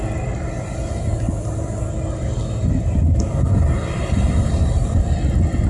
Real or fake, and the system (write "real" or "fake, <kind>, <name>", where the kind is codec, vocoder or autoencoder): real